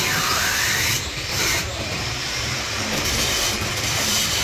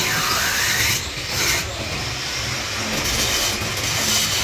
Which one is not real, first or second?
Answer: first